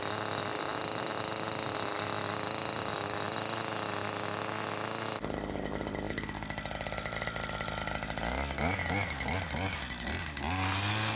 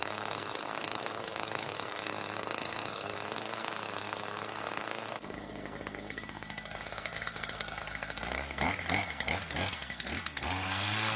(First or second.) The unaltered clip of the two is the first